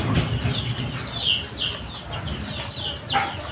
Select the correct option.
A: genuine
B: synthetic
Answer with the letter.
A